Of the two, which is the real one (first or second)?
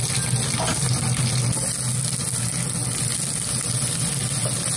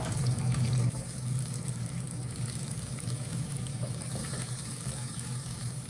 first